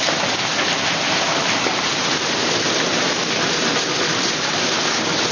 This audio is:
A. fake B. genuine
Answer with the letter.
B